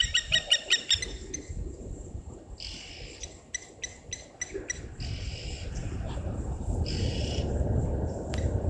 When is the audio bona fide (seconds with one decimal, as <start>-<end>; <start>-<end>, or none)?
0.0-5.8; 7.5-8.7